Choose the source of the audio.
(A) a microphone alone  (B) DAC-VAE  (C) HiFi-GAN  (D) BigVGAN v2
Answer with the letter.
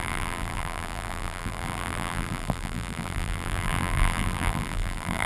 D